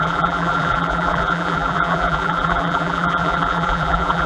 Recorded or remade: remade